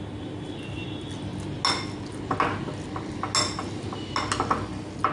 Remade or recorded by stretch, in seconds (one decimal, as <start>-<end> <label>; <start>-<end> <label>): 0.0-5.1 recorded